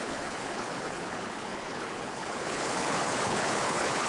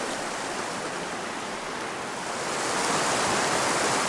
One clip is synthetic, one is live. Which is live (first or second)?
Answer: second